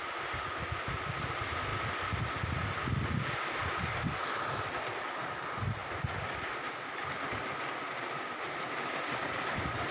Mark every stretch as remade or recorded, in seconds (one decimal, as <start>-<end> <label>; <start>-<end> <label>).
0.0-9.9 recorded